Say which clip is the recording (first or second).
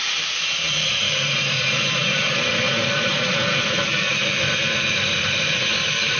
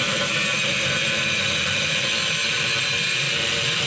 second